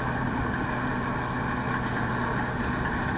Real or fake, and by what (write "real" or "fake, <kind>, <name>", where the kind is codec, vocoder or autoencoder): real